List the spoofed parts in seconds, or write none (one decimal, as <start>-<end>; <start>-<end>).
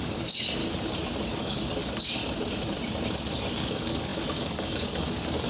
0.0-0.6; 1.2-2.2; 3.5-5.5